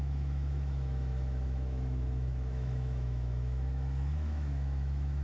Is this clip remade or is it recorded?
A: remade